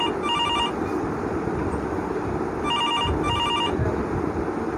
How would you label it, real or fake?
real